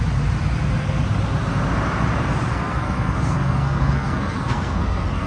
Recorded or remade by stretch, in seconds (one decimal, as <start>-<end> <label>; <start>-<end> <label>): 0.0-2.5 recorded; 2.5-5.3 remade